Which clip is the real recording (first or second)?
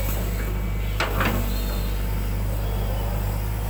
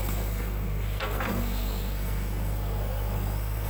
first